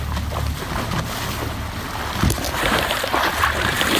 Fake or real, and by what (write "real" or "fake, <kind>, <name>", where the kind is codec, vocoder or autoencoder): real